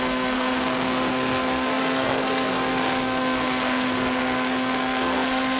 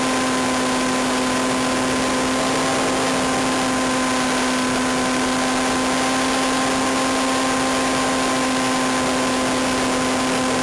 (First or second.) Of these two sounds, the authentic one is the second